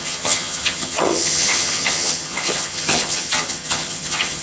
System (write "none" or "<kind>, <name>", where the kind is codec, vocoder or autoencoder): vocoder, HiFi-GAN